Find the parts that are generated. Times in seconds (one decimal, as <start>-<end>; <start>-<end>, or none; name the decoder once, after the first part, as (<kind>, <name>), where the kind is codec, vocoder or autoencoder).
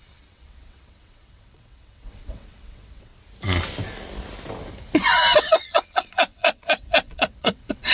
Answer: 0.0-3.1 (vocoder, WaveNeXt); 5.4-7.9